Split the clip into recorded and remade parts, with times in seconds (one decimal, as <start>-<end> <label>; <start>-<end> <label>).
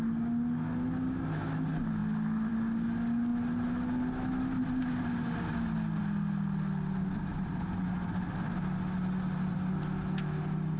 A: 0.0-7.3 recorded; 7.3-7.8 remade; 7.8-10.8 recorded